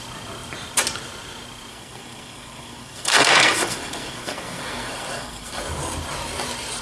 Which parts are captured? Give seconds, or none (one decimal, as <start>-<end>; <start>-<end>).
0.0-1.7; 5.6-6.8